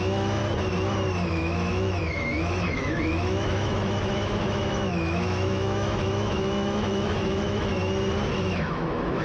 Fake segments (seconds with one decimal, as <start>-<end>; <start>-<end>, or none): 0.0-0.4; 1.3-7.7; 8.3-9.2